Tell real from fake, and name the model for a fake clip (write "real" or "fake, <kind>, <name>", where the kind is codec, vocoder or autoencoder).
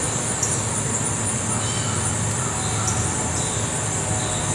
real